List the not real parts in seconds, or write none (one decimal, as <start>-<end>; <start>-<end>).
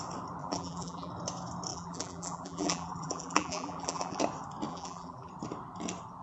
0.4-1.1; 1.7-4.2; 4.7-5.3